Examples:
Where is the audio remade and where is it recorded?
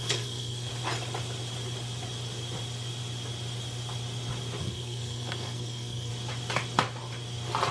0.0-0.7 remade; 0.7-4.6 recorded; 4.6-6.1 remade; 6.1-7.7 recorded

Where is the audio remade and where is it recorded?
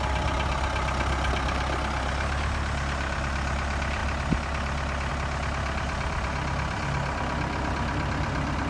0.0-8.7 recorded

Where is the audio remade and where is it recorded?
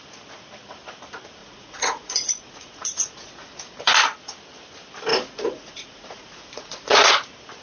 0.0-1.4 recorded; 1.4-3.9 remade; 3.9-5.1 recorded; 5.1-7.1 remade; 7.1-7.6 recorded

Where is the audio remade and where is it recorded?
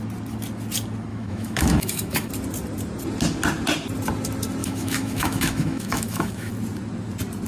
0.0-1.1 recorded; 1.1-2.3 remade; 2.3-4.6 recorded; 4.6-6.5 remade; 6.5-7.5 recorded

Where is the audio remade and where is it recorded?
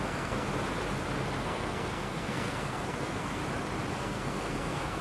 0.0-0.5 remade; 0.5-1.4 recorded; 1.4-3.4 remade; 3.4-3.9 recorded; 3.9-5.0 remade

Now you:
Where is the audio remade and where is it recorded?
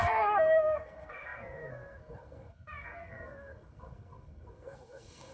0.0-5.3 remade